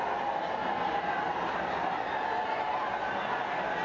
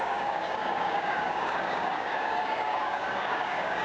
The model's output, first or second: second